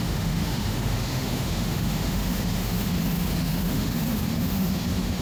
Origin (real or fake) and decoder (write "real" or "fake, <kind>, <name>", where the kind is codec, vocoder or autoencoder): fake, autoencoder, DAC-VAE